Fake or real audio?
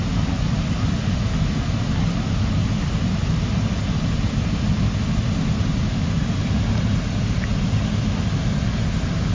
real